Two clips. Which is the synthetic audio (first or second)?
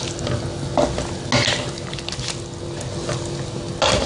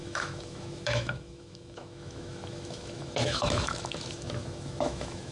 second